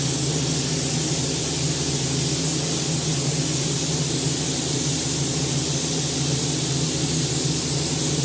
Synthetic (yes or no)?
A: no